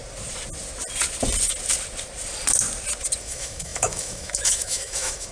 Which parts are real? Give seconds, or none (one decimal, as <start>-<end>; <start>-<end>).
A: 0.0-3.2